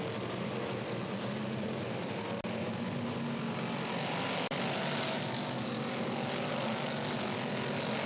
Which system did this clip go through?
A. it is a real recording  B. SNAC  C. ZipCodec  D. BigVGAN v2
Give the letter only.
A